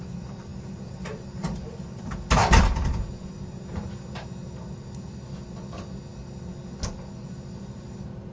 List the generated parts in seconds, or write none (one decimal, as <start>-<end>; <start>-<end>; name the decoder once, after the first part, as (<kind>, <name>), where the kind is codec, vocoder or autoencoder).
0.5-2.0 (vocoder, BigVGAN v2); 2.4-4.2